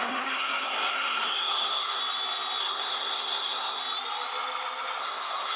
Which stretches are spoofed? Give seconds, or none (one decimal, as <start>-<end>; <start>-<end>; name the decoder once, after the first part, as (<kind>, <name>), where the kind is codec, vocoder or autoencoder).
0.0-2.0 (codec, SNAC); 2.6-3.8; 5.0-5.6